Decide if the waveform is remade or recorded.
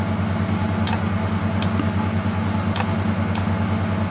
recorded